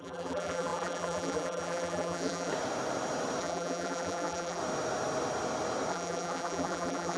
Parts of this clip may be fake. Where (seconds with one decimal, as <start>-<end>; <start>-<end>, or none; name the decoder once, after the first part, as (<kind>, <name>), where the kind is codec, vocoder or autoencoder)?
0.0-2.5 (vocoder, BigVGAN v2); 3.4-4.6; 5.9-7.2